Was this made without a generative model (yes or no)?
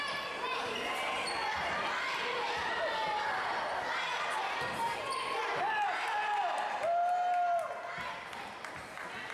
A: yes